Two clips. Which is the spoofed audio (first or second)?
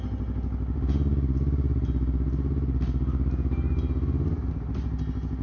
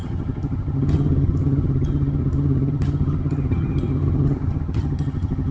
second